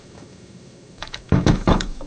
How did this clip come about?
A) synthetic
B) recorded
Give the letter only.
A